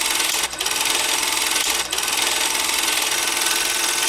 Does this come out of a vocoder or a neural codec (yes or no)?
no